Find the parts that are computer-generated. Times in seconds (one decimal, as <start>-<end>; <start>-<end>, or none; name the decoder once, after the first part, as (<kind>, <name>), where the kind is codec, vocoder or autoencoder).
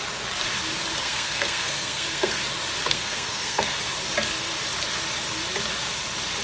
1.0-2.4 (codec, SNAC); 2.8-3.8